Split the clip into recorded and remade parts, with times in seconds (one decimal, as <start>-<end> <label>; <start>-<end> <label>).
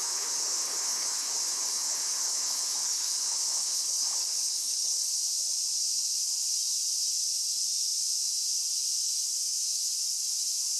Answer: 0.0-5.1 remade; 5.1-10.8 recorded